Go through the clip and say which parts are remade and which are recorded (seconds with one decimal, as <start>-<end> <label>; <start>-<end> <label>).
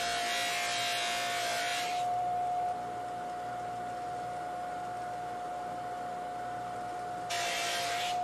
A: 0.0-8.2 recorded